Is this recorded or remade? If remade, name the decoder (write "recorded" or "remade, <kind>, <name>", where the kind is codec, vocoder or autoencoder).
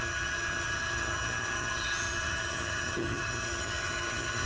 remade, vocoder, HiFi-GAN